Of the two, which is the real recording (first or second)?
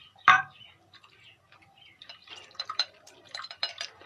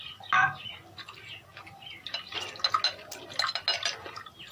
second